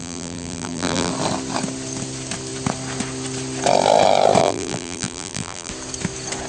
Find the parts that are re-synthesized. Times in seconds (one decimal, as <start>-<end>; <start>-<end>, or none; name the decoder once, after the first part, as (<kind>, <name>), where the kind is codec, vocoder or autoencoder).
0.0-1.1 (vocoder, BigVGAN v2); 4.4-5.7